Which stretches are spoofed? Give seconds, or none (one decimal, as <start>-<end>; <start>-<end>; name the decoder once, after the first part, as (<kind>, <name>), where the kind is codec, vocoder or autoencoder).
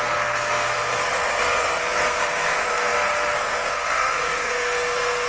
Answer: 0.0-5.3 (codec, SNAC)